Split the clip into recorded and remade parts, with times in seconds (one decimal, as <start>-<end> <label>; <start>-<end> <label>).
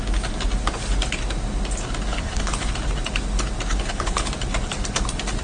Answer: 0.0-2.1 recorded; 2.1-2.7 remade; 2.7-3.7 recorded; 3.7-4.3 remade; 4.3-5.4 recorded